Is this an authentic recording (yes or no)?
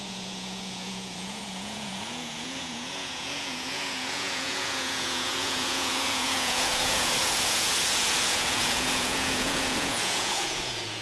no